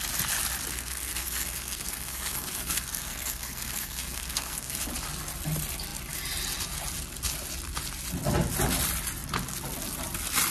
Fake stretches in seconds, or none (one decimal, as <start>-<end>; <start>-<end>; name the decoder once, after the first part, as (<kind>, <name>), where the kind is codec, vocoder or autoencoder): 0.7-4.8 (codec, SNAC)